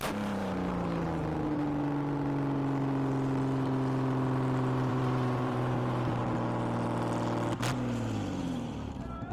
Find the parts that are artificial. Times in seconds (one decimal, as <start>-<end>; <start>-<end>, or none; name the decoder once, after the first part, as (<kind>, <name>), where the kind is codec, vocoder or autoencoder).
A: 0.0-0.4 (vocoder, BigVGAN v2); 4.9-6.2; 8.4-9.3